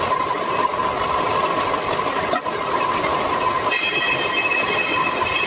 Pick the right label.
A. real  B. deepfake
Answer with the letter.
A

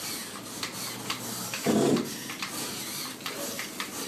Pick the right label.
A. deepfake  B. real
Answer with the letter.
A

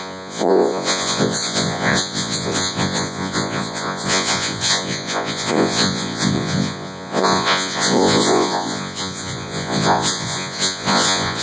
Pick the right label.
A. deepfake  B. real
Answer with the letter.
A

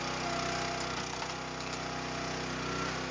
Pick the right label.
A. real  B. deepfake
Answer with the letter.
A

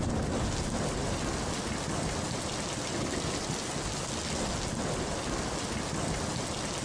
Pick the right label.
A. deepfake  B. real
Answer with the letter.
B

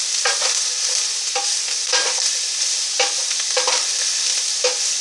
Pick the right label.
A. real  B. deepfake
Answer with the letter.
A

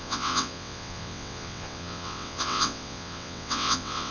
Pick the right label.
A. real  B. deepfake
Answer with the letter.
B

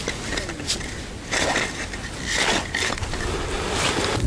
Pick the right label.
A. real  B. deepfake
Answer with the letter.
A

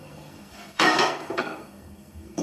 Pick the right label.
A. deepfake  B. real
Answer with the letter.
A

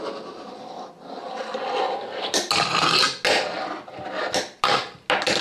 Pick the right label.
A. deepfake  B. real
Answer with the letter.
B